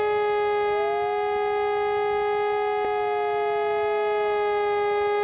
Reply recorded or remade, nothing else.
recorded